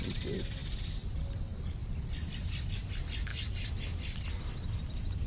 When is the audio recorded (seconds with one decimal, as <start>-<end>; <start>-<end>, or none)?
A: 0.0-5.3